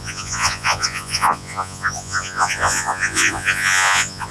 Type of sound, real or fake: fake